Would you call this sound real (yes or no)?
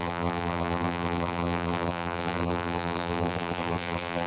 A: no